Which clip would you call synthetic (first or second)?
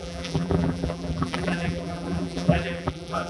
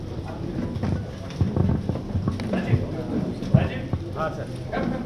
first